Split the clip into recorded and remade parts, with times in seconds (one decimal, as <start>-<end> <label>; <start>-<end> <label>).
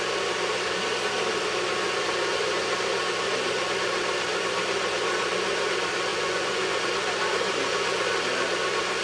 0.0-6.1 recorded; 6.1-6.7 remade; 6.7-9.0 recorded